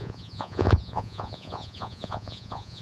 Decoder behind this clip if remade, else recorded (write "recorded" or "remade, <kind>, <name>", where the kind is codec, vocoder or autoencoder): remade, vocoder, Vocos